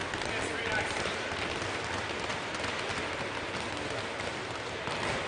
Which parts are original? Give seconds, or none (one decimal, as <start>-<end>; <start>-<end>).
0.0-2.3; 3.0-4.3